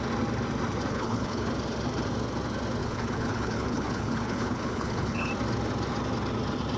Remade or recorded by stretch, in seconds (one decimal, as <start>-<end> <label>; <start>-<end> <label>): 0.0-0.9 recorded; 0.9-1.5 remade; 1.5-2.8 recorded; 2.8-5.3 remade; 5.3-6.8 recorded